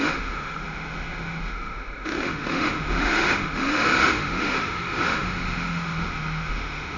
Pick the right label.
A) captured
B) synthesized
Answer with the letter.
B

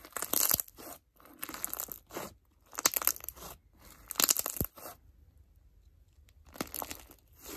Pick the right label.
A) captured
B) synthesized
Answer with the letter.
A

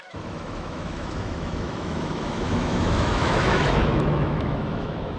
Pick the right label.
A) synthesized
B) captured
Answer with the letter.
A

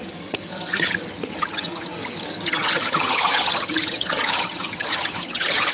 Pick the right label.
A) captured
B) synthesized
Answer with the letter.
B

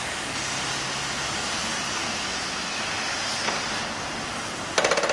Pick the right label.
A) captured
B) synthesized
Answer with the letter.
A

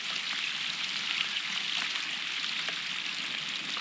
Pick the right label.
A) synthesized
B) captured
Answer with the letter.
B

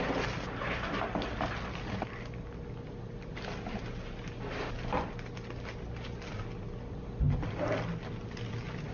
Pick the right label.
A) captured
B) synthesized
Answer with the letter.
A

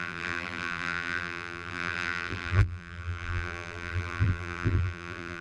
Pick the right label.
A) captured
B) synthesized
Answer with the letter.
B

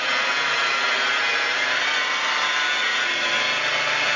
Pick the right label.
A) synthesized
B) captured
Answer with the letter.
B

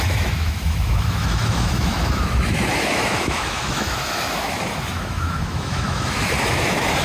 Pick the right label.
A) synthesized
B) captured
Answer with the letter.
A